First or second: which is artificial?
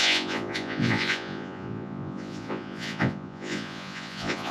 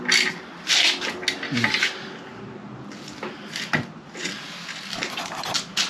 first